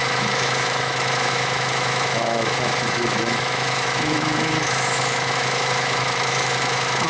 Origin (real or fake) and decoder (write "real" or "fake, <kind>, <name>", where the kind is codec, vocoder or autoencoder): fake, autoencoder, DAC-VAE